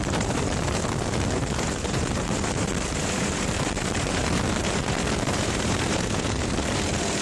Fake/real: fake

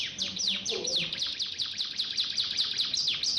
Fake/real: real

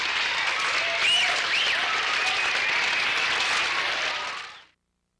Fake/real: real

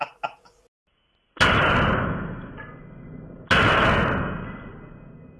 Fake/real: real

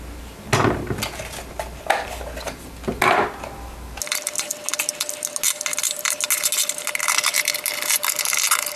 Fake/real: real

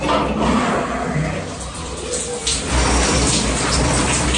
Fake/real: real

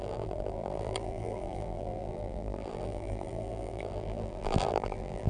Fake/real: fake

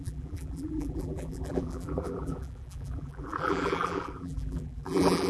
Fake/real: fake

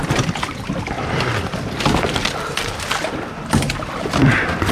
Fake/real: real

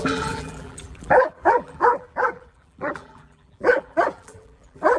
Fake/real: fake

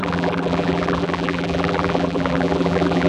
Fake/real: fake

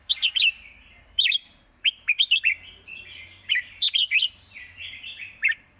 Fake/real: fake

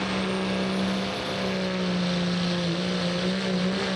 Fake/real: real